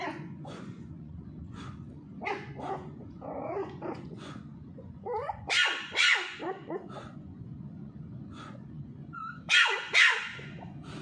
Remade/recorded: remade